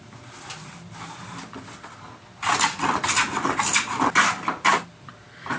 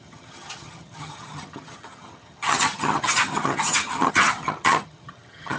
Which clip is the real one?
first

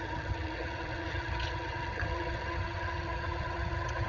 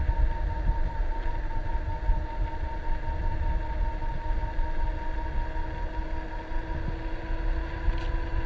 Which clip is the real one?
second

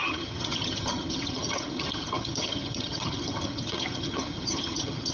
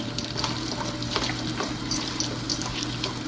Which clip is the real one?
second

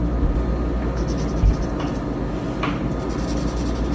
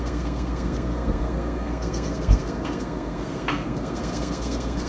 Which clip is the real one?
first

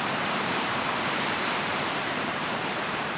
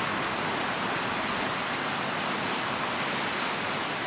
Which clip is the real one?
second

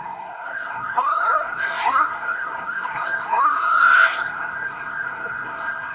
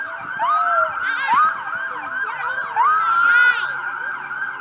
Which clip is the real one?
second